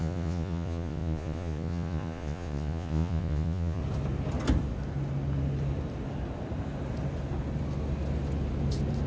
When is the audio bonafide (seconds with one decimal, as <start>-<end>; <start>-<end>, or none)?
3.8-9.1